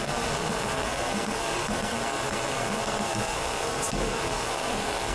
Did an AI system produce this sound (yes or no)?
yes